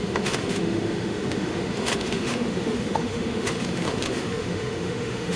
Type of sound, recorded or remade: remade